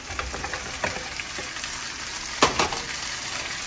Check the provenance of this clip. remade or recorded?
recorded